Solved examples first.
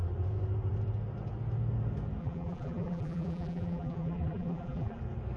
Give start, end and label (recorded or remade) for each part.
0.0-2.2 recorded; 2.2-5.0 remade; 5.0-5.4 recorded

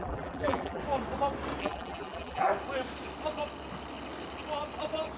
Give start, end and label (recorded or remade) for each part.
0.0-0.8 remade; 0.8-1.6 recorded; 1.6-2.5 remade; 2.5-5.2 recorded

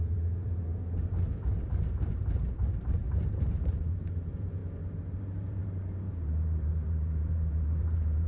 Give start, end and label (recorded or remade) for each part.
0.0-0.7 remade; 0.7-1.7 recorded; 1.7-4.6 remade; 4.6-5.1 recorded; 5.1-8.3 remade

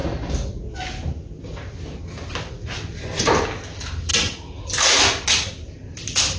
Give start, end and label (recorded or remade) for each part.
0.0-6.4 recorded

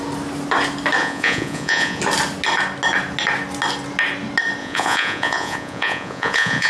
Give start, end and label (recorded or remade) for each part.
0.0-1.0 recorded; 1.0-2.0 remade; 2.0-4.6 recorded; 4.6-6.7 remade

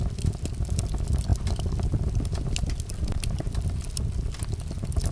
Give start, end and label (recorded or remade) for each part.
0.0-5.1 recorded

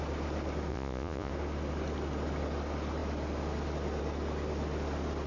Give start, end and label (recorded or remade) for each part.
0.0-0.7 recorded; 0.7-1.3 remade; 1.3-5.3 recorded